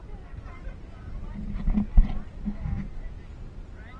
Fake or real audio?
real